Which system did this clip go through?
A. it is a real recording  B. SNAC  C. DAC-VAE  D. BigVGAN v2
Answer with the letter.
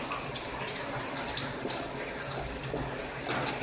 A